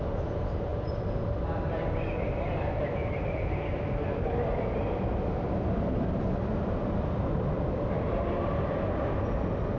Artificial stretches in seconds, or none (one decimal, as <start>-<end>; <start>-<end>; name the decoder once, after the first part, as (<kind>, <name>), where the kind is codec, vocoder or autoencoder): none